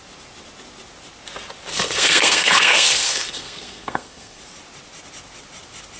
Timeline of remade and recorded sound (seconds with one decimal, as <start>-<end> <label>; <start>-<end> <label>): 0.0-1.7 recorded; 1.7-4.4 remade; 4.4-6.0 recorded